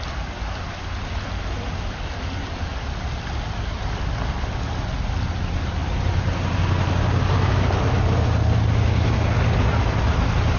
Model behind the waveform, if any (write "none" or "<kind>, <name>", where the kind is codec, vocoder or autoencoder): none